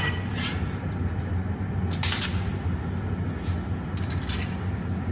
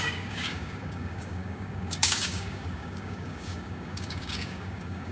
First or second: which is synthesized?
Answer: second